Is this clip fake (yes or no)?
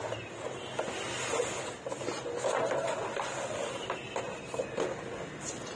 no